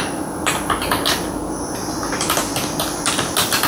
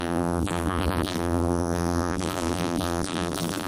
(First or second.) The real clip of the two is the first